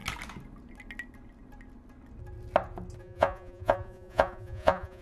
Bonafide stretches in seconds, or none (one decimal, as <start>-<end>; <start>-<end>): 0.0-3.0